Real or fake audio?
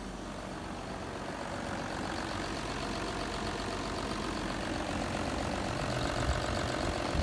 real